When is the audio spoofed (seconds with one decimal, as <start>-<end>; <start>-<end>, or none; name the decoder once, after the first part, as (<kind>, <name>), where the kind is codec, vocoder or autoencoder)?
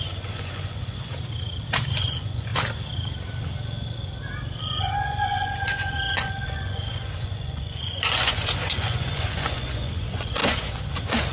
0.0-1.1 (vocoder, Vocos); 1.9-2.5; 4.6-11.3